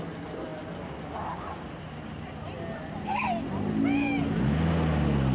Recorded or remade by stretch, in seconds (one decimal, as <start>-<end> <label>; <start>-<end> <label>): 0.0-5.3 recorded

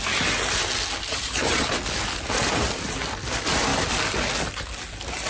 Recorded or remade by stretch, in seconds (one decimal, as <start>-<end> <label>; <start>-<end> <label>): 0.0-1.1 recorded; 1.1-1.7 remade; 1.7-5.3 recorded

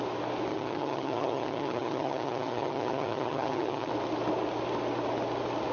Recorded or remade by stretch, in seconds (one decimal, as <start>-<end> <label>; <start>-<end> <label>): 0.0-0.5 recorded; 0.5-3.9 remade; 3.9-5.7 recorded

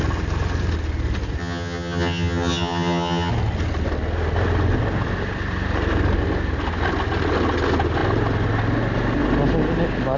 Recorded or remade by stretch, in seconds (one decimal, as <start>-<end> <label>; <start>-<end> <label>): 0.0-1.4 recorded; 1.4-3.3 remade; 3.3-10.2 recorded

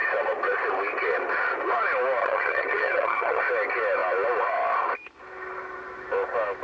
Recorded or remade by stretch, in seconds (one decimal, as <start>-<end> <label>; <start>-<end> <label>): 0.0-2.2 recorded; 2.2-3.4 remade; 3.4-6.6 recorded

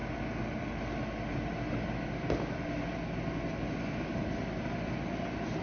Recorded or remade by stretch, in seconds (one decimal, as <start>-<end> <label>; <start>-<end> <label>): 0.0-5.6 recorded

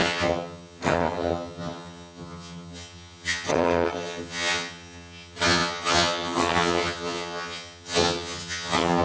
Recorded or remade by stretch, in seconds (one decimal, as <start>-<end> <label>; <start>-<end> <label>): 0.0-9.0 remade

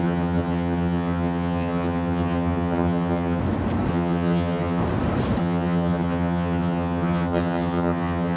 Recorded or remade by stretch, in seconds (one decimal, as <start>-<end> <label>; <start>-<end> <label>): 0.0-3.4 remade; 3.4-3.9 recorded; 3.9-4.8 remade; 4.8-5.4 recorded; 5.4-8.4 remade